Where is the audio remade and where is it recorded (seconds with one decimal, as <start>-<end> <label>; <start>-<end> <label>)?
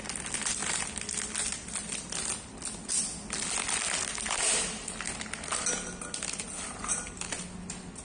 0.0-8.0 recorded